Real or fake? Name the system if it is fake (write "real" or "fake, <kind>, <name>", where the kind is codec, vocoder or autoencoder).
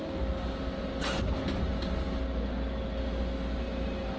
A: real